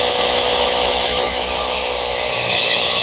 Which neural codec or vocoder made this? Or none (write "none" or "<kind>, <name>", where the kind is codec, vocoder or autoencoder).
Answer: autoencoder, DAC-VAE